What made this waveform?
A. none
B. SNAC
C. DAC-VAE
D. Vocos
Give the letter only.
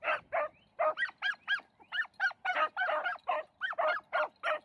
A